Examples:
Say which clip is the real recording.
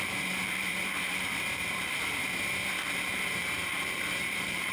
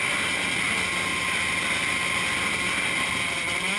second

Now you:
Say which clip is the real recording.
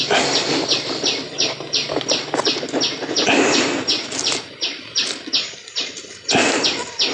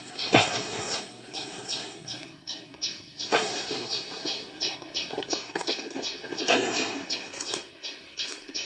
first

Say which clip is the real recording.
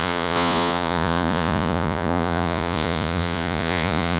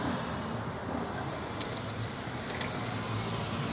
second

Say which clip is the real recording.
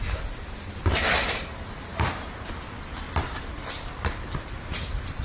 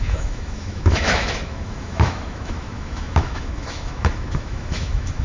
first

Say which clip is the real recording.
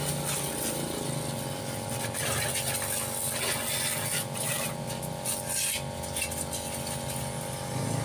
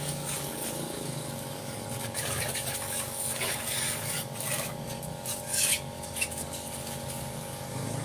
first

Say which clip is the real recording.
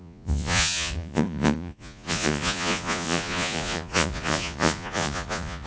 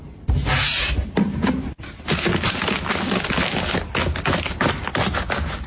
second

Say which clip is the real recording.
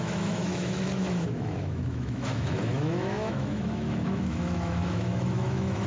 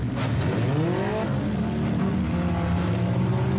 second